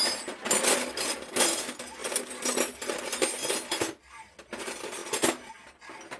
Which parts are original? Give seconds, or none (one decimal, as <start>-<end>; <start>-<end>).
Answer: 0.0-6.2